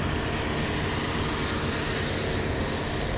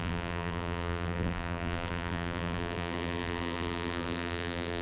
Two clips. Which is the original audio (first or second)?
first